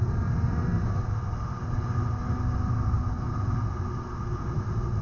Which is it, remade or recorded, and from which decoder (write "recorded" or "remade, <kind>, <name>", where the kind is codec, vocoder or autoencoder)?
recorded